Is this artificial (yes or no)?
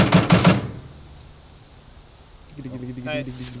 no